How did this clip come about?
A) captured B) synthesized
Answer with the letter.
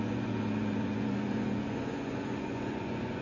B